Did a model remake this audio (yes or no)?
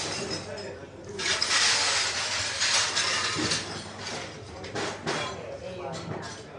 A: no